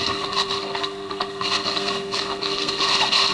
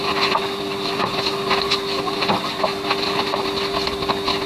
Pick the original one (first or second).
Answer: second